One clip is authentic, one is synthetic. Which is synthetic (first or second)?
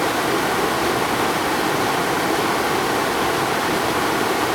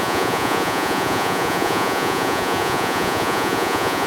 second